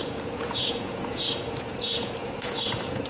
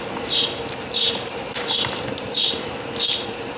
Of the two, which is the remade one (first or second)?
first